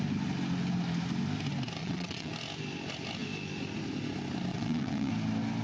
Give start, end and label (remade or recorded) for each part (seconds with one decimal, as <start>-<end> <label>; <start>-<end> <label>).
0.0-1.8 recorded; 1.8-2.3 remade; 2.3-4.5 recorded; 4.5-5.1 remade; 5.1-5.6 recorded